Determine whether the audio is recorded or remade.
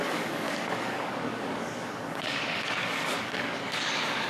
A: remade